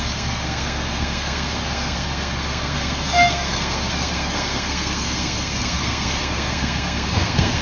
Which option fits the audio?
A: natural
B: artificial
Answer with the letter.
B